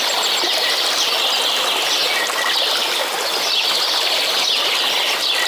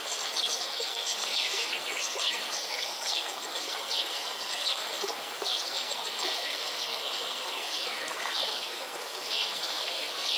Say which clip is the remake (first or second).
second